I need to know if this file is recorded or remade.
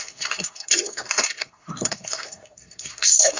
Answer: remade